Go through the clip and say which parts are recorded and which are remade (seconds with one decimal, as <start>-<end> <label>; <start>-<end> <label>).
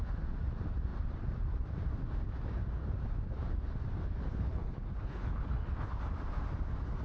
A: 0.0-4.3 recorded; 4.3-6.0 remade; 6.0-7.0 recorded